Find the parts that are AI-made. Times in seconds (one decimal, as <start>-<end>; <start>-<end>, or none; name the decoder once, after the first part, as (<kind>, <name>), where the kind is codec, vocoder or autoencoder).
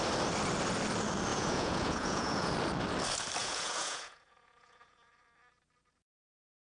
1.3-2.5 (vocoder, Vocos); 3.4-5.1